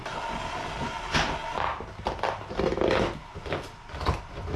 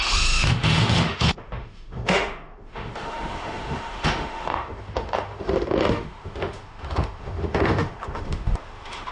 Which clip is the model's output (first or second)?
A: second